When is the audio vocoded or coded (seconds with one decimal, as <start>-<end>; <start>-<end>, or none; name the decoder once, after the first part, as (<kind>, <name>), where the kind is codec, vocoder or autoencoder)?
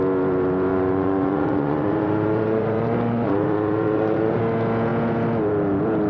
0.7-4.4 (vocoder, Vocos)